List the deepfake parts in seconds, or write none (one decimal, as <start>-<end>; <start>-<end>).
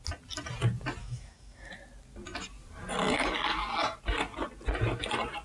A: 1.0-1.7